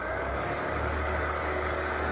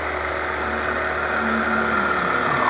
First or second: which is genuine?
second